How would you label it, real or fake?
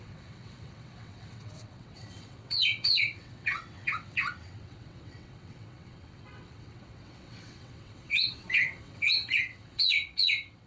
fake